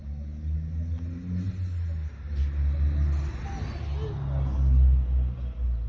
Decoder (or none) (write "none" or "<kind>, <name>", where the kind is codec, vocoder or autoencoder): none